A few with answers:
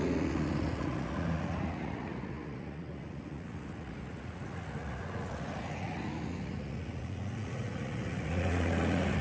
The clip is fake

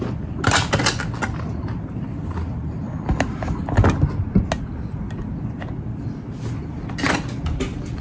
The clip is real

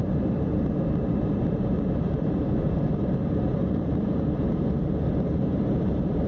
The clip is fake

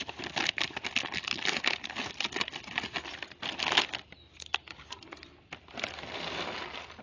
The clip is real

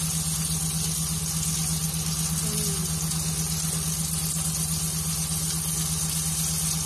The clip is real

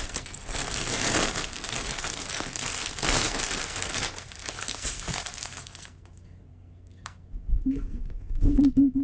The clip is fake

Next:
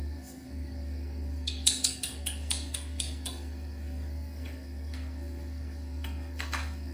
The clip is fake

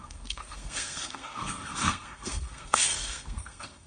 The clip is fake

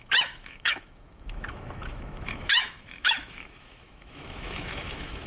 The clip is fake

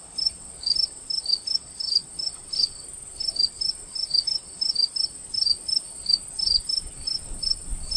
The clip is real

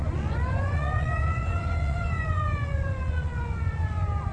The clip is fake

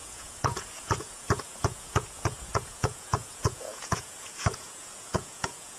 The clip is fake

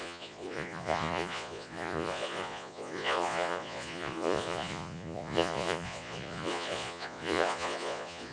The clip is fake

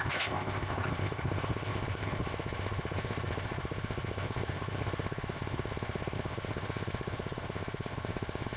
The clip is fake